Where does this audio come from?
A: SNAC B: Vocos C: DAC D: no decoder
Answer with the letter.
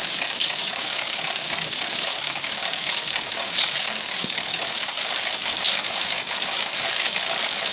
C